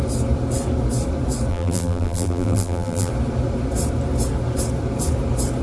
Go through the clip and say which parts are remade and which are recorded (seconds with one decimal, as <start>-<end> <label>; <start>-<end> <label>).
0.0-1.5 recorded; 1.5-3.1 remade; 3.1-5.6 recorded